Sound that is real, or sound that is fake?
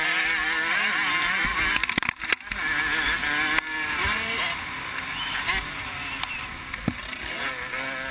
real